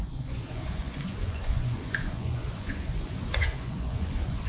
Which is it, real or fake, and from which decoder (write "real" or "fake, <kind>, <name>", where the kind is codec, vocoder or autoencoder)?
fake, vocoder, Vocos